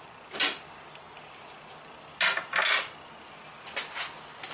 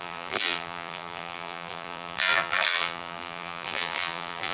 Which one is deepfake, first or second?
second